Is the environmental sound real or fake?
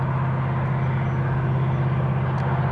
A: real